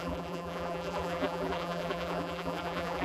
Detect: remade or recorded remade